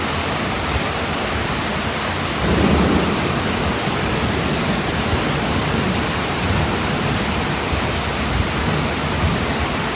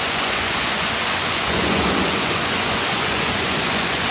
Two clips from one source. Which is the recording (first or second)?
first